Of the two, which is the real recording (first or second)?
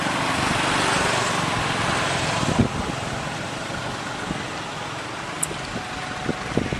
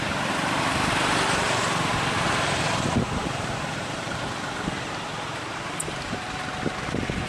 first